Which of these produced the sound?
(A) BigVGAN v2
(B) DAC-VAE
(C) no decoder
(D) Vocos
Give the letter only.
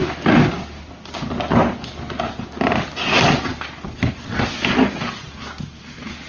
C